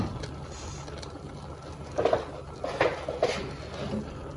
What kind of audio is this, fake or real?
real